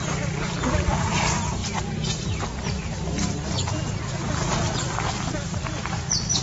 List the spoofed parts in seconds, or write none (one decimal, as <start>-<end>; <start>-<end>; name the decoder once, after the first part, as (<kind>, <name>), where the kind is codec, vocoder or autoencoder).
none